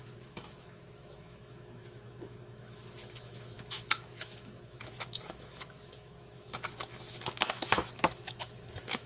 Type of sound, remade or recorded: remade